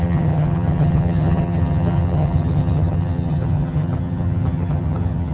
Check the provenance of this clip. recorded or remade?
remade